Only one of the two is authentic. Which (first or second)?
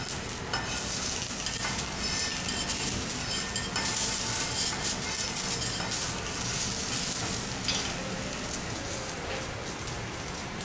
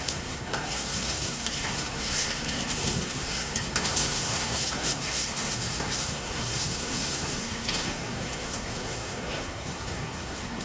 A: first